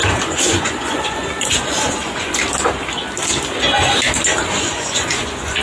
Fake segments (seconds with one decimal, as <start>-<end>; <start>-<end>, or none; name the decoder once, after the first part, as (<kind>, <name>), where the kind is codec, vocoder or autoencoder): 0.0-2.4 (vocoder, Vocos); 4.5-5.6

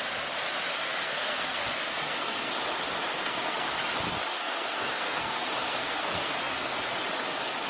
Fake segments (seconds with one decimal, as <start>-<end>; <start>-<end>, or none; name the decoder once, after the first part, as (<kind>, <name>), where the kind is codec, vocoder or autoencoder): 0.7-2.5 (codec, SNAC); 3.1-3.8; 4.3-6.8